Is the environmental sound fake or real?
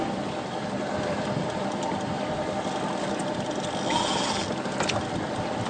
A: real